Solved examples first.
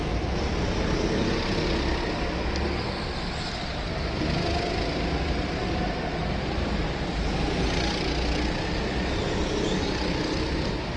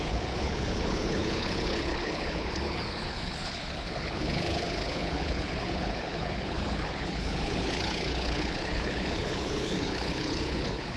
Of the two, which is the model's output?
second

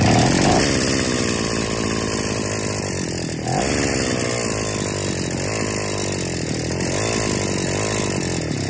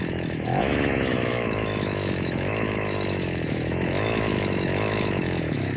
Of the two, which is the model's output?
second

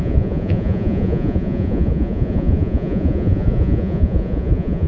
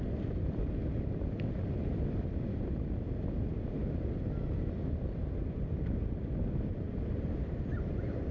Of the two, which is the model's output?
first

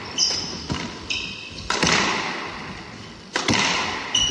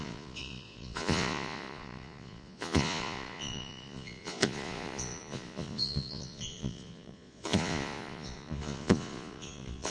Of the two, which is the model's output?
second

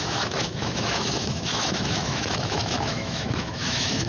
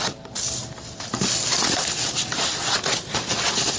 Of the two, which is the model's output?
first